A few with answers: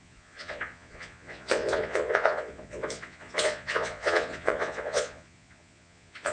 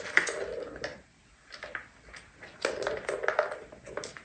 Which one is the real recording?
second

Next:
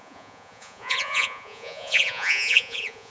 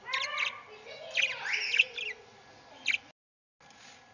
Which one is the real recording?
second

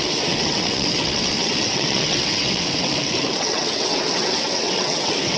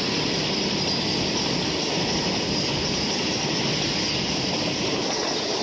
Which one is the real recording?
second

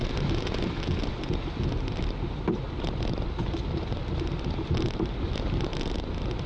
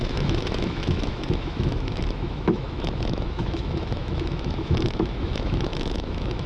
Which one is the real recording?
first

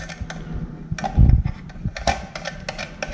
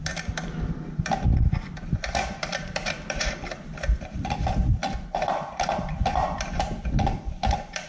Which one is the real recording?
first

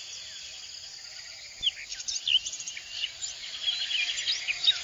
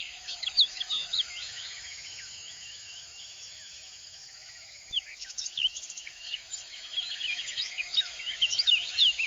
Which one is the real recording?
first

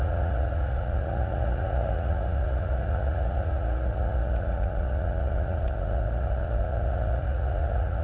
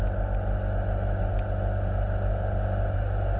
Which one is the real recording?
second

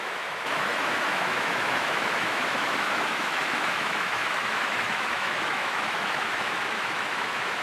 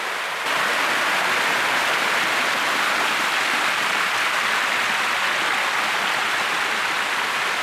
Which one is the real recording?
second